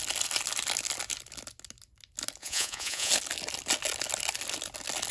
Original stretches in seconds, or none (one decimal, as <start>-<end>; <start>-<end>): 0.0-2.4; 3.1-5.1